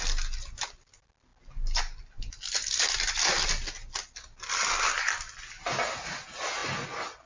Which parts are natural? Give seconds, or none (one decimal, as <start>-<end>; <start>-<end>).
0.0-7.3

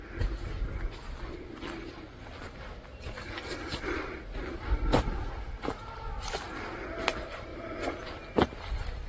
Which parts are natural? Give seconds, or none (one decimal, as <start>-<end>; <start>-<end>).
0.0-7.5; 8.0-9.1

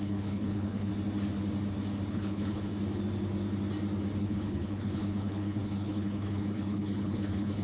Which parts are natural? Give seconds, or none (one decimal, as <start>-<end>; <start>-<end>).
0.9-2.1; 2.7-4.2